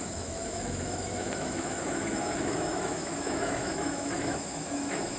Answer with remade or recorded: remade